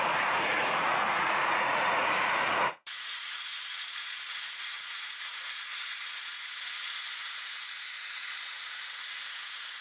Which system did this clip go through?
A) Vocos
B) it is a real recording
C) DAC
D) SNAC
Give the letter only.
A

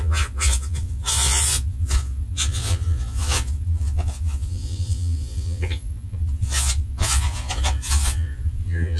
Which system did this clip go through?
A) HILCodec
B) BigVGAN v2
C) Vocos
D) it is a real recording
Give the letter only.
C